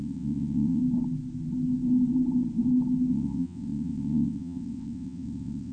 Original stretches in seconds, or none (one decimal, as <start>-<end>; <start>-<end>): 0.8-3.1